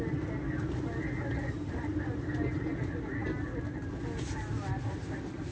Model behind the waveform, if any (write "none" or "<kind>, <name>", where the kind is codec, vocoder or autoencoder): none